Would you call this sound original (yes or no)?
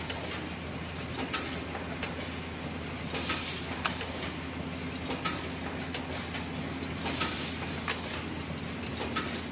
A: yes